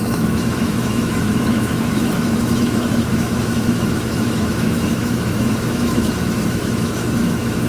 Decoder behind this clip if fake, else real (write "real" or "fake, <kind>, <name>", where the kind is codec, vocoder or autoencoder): fake, autoencoder, DAC-VAE